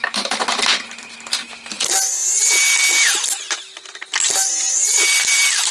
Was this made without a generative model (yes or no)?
yes